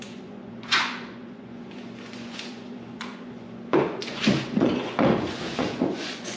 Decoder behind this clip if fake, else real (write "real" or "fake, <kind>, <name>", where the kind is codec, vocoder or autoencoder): fake, vocoder, Vocos